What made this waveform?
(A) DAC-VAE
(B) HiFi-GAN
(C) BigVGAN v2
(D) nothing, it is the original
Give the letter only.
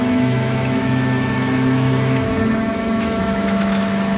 A